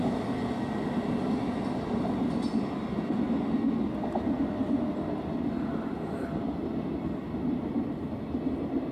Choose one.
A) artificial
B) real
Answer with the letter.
B